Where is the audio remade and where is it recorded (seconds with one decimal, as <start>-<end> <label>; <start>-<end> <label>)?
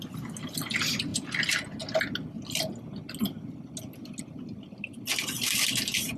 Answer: 0.0-6.2 recorded